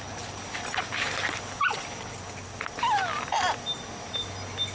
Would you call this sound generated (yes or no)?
no